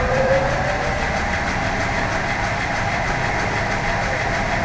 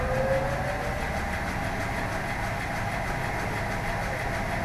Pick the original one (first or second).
second